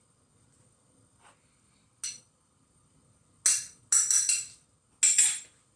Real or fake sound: real